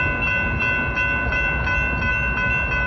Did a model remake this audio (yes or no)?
no